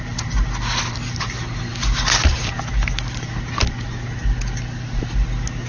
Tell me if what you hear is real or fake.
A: real